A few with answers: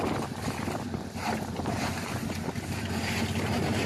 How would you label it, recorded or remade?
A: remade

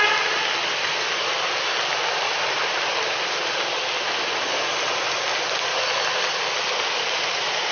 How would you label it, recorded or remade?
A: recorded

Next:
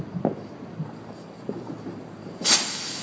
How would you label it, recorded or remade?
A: recorded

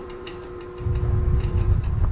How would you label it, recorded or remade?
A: remade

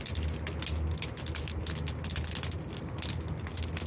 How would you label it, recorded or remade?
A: recorded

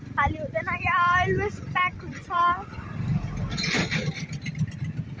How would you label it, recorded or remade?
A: remade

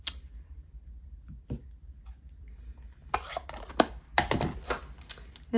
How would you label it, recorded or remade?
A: remade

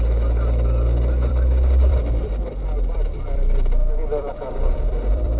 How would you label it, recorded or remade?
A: remade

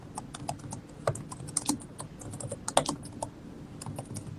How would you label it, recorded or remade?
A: recorded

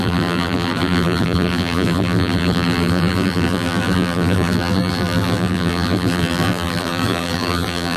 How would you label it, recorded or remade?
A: remade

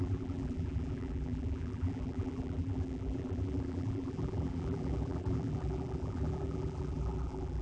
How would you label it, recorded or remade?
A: remade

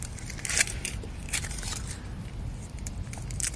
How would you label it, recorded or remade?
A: remade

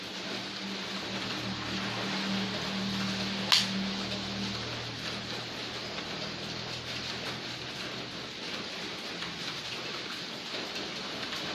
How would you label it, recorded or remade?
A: recorded